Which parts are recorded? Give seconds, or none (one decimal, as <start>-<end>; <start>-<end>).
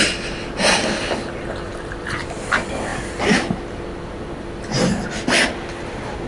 0.0-6.3